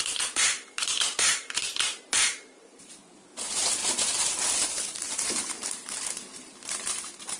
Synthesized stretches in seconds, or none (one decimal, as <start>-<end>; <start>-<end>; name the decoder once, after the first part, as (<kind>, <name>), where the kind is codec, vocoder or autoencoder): 0.0-7.4 (vocoder, BigVGAN v2)

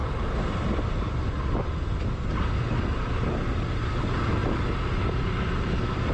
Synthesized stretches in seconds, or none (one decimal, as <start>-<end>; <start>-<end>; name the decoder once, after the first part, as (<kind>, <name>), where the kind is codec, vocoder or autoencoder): none

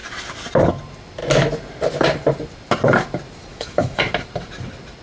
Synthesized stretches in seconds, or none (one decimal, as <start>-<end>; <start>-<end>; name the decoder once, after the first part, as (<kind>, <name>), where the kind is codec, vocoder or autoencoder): 3.5-4.0 (autoencoder, DAC-VAE)